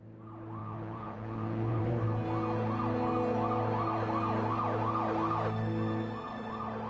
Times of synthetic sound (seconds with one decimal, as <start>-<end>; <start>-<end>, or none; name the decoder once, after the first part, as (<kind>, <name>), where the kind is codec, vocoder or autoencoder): 0.6-1.8 (vocoder, Vocos)